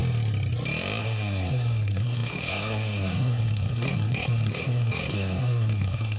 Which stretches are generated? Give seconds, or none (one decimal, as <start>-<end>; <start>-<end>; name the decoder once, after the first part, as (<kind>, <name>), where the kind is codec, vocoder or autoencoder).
1.0-6.2 (codec, SNAC)